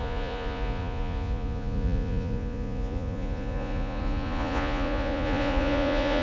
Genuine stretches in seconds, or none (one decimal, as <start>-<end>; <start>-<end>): none